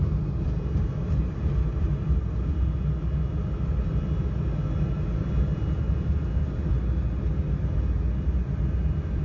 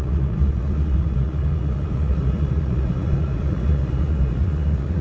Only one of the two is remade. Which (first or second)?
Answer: second